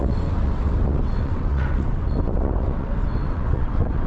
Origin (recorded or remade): remade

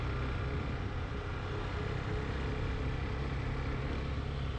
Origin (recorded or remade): recorded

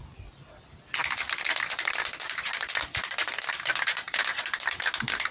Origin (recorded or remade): recorded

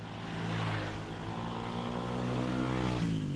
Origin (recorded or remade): recorded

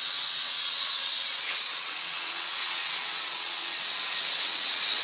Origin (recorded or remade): remade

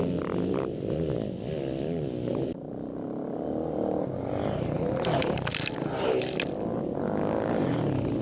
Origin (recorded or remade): recorded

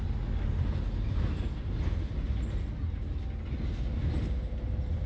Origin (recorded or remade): recorded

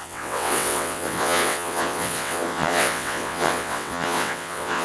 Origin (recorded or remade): remade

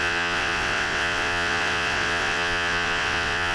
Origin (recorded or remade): remade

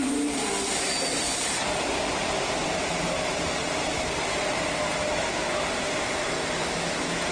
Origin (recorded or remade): recorded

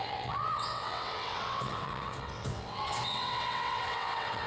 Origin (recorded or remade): remade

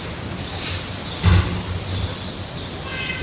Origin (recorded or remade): recorded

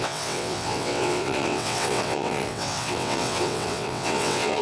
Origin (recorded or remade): remade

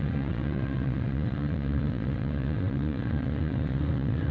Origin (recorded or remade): remade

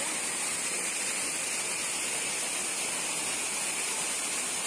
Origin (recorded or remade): recorded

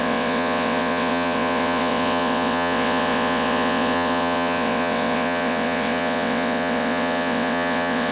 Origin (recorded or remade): remade